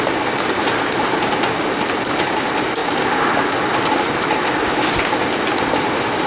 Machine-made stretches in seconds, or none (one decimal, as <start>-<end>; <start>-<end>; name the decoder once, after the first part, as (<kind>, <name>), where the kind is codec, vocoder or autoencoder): none